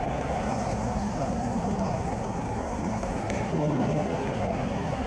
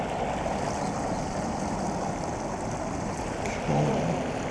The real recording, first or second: second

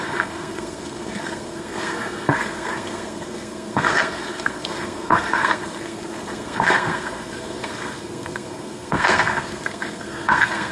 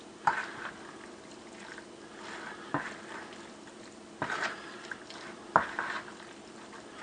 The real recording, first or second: second